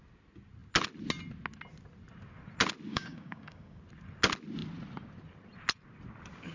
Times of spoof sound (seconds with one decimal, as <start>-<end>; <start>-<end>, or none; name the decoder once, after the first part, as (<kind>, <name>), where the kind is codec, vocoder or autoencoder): 2.9-3.8 (codec, DAC)